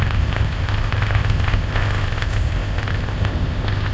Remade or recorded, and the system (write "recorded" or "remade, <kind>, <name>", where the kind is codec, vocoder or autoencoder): remade, codec, ZipCodec